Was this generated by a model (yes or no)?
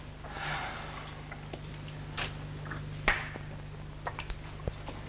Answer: no